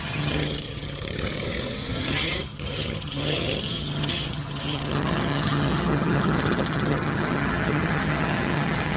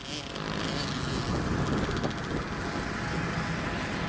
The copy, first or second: first